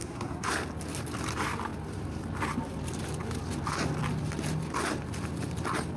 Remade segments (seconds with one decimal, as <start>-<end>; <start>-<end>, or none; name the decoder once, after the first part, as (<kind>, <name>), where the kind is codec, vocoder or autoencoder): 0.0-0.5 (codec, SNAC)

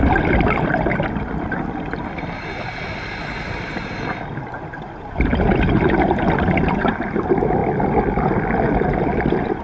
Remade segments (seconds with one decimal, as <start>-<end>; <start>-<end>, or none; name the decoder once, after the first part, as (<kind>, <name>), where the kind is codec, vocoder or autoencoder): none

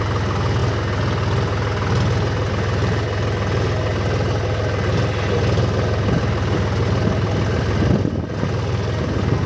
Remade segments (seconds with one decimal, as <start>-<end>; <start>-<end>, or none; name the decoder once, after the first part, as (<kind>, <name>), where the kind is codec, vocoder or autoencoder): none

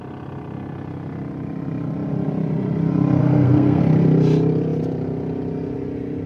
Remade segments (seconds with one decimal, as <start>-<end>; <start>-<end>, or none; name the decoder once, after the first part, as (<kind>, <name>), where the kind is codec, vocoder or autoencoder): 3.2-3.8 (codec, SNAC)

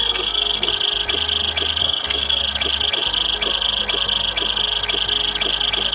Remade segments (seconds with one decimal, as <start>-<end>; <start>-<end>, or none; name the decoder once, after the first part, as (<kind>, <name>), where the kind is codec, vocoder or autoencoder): 0.0-0.7 (codec, SNAC); 1.8-2.4

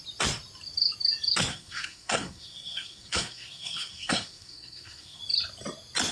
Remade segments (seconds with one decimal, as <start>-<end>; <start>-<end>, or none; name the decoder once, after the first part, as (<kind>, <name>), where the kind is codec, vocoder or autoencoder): 1.5-5.2 (codec, SNAC)